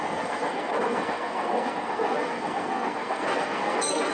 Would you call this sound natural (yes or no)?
no